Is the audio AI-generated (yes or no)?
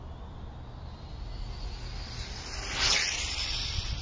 no